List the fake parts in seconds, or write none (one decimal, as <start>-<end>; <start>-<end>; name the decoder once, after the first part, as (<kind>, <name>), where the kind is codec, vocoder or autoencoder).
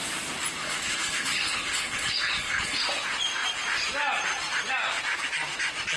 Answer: 0.6-2.8 (codec, HILCodec)